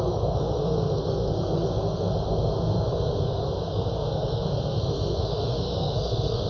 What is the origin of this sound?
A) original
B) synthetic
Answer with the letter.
B